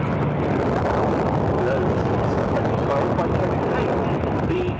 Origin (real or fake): real